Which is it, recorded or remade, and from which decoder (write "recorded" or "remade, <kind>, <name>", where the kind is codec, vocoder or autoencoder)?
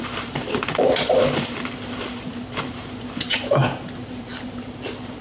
remade, vocoder, BigVGAN v2